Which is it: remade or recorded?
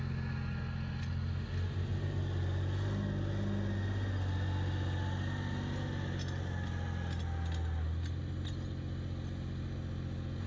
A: recorded